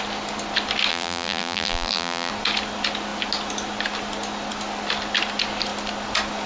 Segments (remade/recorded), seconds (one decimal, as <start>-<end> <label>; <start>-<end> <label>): 0.0-0.9 recorded; 0.9-2.3 remade; 2.3-6.5 recorded